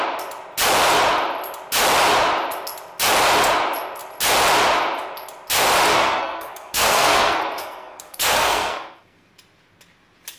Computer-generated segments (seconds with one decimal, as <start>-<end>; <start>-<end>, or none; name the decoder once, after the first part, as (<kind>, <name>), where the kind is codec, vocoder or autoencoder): 5.9-9.3 (codec, SNAC)